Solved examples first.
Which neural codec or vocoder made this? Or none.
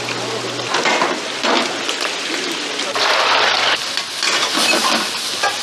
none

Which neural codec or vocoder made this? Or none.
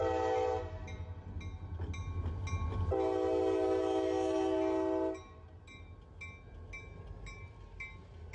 none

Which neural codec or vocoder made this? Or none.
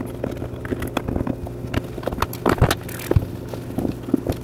none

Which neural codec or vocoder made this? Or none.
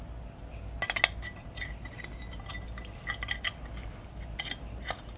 none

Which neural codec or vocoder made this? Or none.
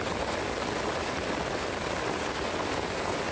none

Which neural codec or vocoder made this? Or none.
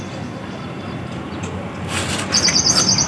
none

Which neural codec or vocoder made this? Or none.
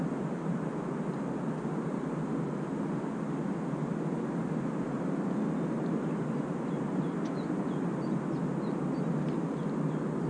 none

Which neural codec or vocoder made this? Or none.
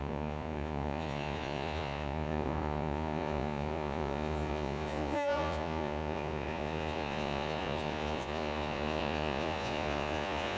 vocoder, Vocos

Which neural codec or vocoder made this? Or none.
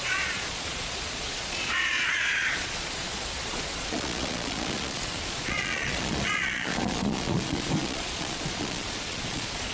vocoder, Vocos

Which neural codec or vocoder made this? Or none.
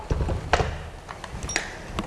none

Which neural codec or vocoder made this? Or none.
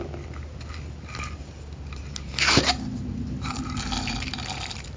none